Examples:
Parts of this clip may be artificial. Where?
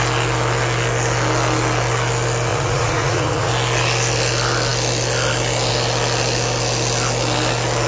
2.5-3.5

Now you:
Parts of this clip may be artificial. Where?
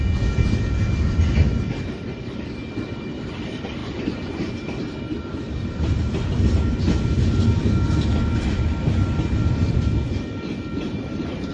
3.8-4.5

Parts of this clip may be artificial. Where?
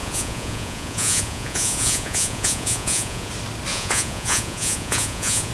0.0-3.3; 3.7-5.5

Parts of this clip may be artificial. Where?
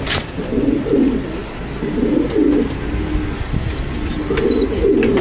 none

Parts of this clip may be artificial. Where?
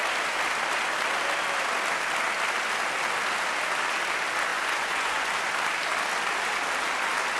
4.5-5.3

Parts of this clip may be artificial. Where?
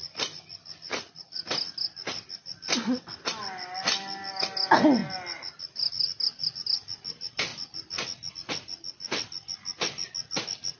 none